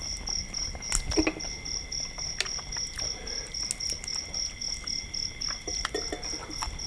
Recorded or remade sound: recorded